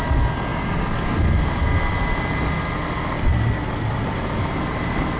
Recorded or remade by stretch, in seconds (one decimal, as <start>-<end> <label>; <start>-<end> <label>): 0.0-5.2 recorded